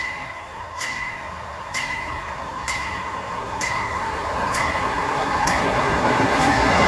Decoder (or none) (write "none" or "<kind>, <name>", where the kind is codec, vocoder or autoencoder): codec, SNAC